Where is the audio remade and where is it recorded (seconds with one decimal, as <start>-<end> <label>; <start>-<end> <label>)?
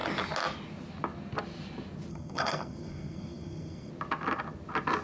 0.0-2.1 recorded; 2.1-3.9 remade; 3.9-5.0 recorded